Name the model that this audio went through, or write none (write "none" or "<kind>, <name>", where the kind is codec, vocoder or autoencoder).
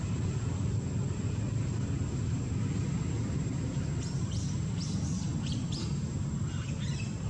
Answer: vocoder, BigVGAN v2